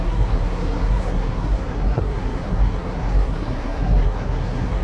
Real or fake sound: fake